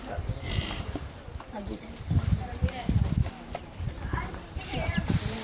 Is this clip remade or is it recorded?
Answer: remade